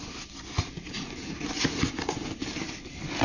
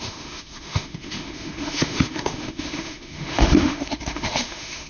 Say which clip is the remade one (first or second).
second